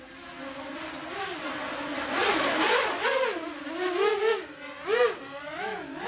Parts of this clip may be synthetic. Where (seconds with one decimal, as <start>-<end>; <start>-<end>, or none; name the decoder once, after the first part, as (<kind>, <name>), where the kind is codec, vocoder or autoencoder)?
none